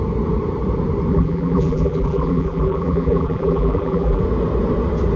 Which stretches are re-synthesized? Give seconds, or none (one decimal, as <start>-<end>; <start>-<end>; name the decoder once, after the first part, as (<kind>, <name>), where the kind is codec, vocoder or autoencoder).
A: 1.1-4.2 (vocoder, BigVGAN v2)